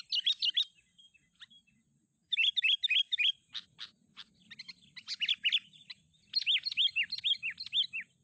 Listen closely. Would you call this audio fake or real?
real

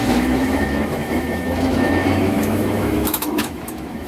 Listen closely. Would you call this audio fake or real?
fake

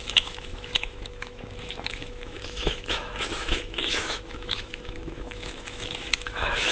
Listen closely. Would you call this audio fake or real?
fake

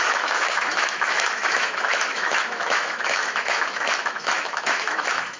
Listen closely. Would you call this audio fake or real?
fake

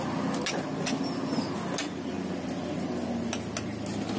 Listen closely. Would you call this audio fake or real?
real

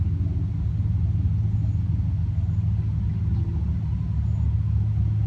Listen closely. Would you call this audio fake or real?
real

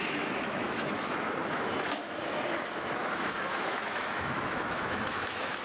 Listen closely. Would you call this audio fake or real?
fake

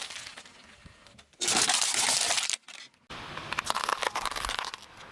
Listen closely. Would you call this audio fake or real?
real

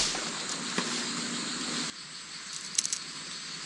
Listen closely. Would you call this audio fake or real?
real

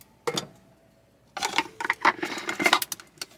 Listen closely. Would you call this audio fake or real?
real